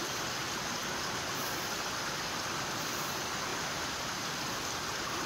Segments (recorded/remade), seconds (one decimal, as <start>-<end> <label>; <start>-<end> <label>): 0.0-3.5 recorded; 3.5-4.2 remade; 4.2-5.3 recorded